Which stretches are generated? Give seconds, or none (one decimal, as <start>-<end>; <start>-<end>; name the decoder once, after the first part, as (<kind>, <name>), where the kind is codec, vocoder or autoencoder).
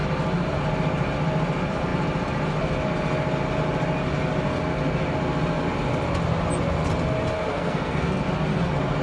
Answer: 7.5-8.2 (codec, SNAC)